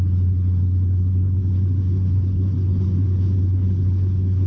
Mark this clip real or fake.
fake